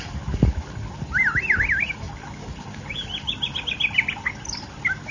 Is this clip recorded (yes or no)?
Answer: yes